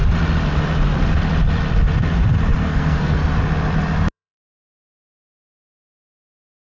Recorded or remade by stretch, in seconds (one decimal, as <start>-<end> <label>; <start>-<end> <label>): 0.0-2.6 recorded; 2.6-3.2 remade; 3.2-4.1 recorded; 4.1-6.8 remade